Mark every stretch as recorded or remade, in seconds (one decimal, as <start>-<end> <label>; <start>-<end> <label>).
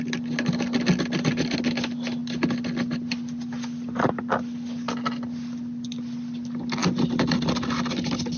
0.0-8.4 recorded